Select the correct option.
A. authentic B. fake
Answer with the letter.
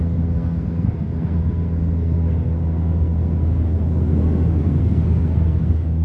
B